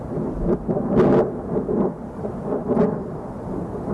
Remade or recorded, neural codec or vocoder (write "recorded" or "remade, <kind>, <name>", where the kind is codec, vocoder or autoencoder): recorded